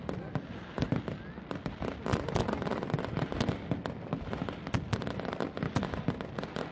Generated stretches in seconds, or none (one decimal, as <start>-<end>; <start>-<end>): none